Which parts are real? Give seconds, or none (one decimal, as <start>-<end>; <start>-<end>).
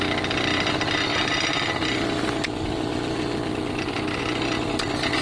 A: 0.0-5.2